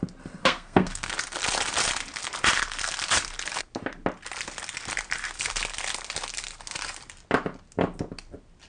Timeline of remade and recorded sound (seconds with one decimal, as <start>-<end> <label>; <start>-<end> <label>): 0.0-0.4 recorded; 0.4-1.1 remade; 1.1-8.7 recorded